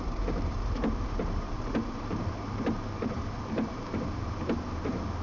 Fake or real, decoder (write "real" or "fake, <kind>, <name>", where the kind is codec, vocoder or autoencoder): fake, vocoder, BigVGAN v2